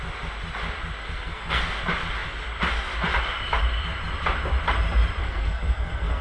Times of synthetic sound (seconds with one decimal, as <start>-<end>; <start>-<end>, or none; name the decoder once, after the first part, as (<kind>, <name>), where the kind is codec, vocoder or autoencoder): 1.0-1.6 (codec, SNAC); 5.2-6.2